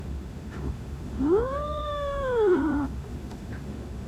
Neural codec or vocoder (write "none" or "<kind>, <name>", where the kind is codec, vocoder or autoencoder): autoencoder, DAC-VAE